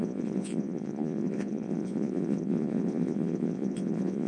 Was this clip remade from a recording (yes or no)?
yes